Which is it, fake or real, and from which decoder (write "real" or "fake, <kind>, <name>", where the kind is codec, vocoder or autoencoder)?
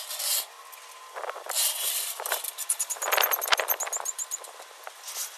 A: fake, vocoder, BigVGAN v2